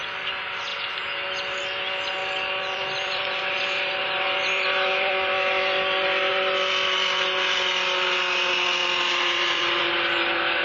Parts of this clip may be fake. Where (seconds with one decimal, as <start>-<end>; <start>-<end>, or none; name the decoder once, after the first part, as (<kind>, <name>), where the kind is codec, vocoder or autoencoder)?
2.2-5.1 (vocoder, BigVGAN v2); 8.8-9.8